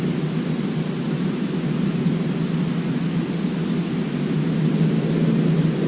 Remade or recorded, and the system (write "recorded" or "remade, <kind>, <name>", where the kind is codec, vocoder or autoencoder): recorded